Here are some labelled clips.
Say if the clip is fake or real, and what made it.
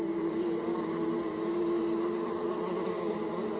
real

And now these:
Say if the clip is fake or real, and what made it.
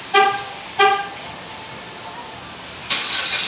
real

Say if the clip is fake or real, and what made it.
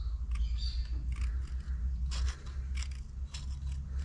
real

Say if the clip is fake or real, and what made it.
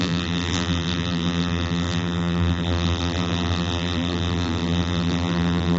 fake, vocoder, BigVGAN v2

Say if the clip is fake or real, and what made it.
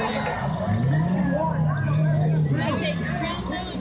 real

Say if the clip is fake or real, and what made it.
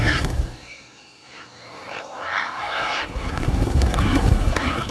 fake, codec, SNAC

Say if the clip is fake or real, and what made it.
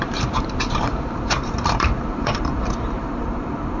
fake, vocoder, BigVGAN v2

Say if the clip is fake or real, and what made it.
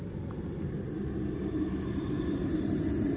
real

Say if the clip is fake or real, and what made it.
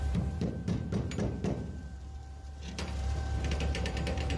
fake, vocoder, BigVGAN v2